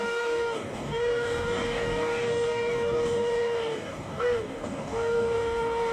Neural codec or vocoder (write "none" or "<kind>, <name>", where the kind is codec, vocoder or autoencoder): codec, DAC